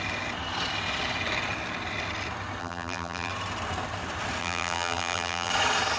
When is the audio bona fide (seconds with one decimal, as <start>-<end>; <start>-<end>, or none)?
0.0-2.6; 3.3-4.4; 5.5-6.0